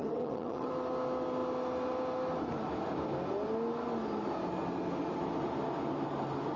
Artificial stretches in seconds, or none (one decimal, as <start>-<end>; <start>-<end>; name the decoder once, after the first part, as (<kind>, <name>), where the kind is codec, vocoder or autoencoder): 0.0-0.7 (vocoder, HiFi-GAN)